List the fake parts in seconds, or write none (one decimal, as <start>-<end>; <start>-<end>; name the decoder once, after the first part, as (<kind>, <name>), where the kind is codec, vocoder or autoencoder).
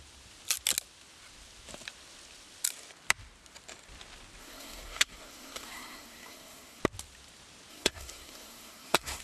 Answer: 4.4-6.8 (codec, SNAC); 7.7-9.2